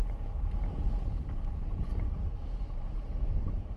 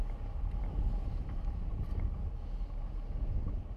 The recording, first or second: second